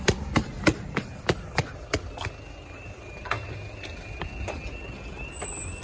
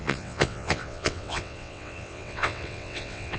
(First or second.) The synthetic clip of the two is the second